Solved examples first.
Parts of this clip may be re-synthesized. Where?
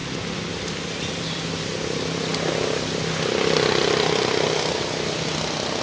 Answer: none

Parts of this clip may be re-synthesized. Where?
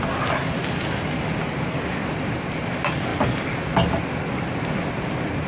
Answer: none